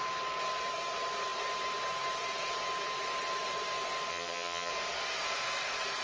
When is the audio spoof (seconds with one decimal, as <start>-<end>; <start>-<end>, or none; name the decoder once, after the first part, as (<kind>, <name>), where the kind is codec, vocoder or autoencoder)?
4.1-4.7 (vocoder, HiFi-GAN)